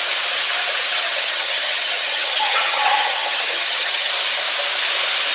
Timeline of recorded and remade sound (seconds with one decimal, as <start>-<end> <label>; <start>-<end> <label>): 0.0-0.9 recorded; 0.9-4.1 remade; 4.1-5.3 recorded